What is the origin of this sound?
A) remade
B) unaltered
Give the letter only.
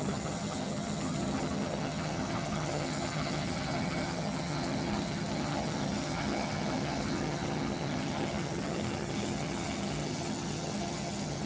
A